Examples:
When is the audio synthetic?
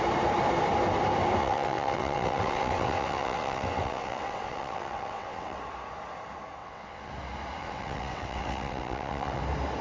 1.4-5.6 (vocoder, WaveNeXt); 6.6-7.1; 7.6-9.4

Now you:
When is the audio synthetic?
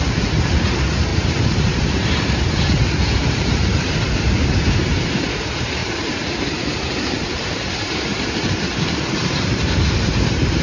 0.0-10.6 (vocoder, BigVGAN v2)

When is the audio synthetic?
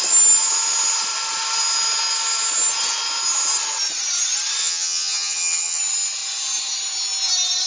4.6-5.8 (vocoder, HiFi-GAN)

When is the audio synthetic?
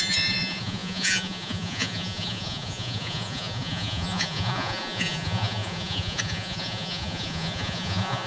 0.0-8.3 (vocoder, Vocos)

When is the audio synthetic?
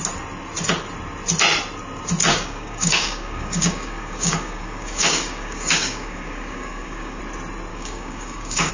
2.3-7.2 (codec, DAC); 7.7-8.7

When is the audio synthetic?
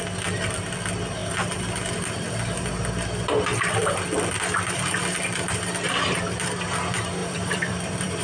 1.2-1.9 (vocoder, BigVGAN v2); 7.2-8.2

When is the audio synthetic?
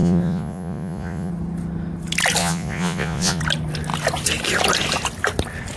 0.0-1.3 (vocoder, Vocos); 2.4-3.4